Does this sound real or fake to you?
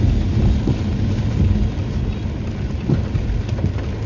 real